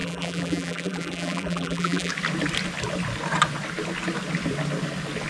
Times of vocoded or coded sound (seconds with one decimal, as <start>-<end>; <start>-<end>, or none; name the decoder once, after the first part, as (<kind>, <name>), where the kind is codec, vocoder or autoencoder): 0.0-2.1 (vocoder, BigVGAN v2)

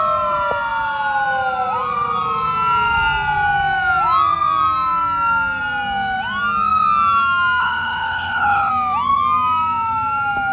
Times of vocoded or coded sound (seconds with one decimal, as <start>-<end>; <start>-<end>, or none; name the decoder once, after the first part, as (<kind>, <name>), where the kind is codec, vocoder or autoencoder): 7.6-8.7 (codec, HILCodec)

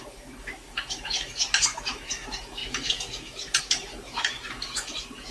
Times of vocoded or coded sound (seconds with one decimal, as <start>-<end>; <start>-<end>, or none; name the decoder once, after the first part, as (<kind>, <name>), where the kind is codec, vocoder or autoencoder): 0.0-5.3 (autoencoder, DAC-VAE)